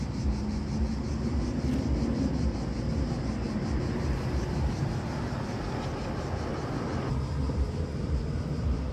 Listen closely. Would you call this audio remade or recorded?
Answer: recorded